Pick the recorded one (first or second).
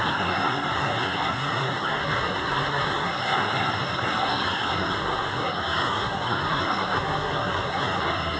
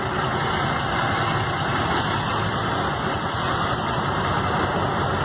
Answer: second